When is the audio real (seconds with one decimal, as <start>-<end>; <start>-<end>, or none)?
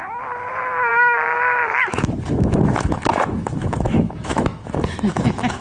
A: 0.0-1.9